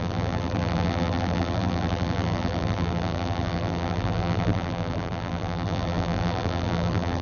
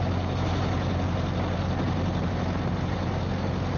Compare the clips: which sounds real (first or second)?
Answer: second